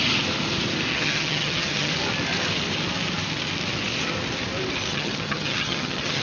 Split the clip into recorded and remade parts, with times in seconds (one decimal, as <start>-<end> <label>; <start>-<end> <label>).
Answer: 0.0-0.9 recorded; 0.9-1.9 remade; 1.9-4.9 recorded; 4.9-6.2 remade